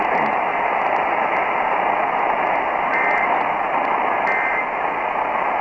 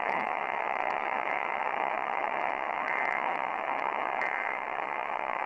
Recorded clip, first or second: first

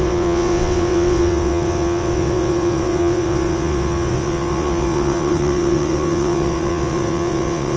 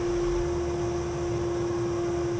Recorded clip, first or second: second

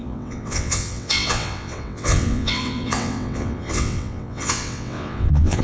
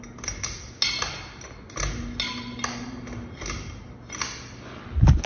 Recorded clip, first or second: second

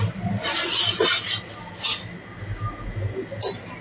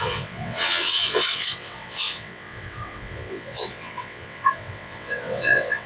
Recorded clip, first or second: first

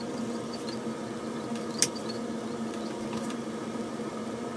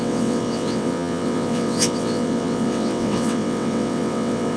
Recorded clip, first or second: first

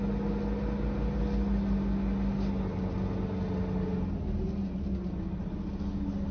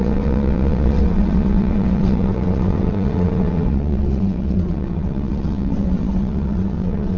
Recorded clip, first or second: first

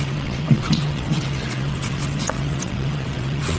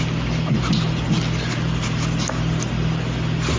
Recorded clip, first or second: second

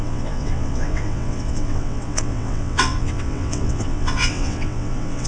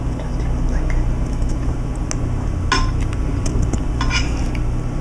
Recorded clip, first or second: second